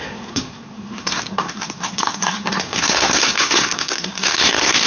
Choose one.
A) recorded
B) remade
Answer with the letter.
B